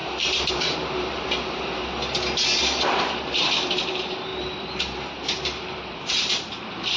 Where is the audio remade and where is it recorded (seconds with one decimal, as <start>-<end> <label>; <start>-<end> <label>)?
0.0-2.0 remade; 2.0-2.6 recorded; 2.6-7.0 remade